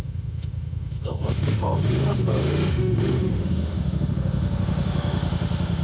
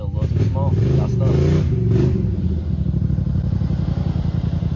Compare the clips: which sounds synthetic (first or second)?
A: first